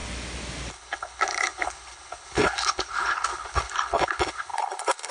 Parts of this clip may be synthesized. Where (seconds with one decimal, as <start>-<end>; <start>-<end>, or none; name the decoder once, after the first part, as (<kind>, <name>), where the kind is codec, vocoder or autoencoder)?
0.7-5.1 (codec, HILCodec)